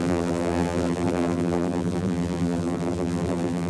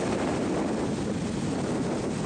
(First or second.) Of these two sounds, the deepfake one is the first